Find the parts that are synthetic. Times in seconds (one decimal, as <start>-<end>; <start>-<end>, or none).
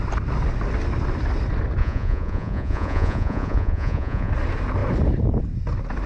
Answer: 1.8-4.3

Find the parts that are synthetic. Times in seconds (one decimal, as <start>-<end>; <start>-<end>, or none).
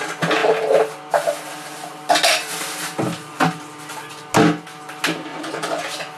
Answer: 5.3-5.8